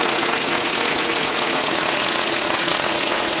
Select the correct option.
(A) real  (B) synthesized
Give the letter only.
B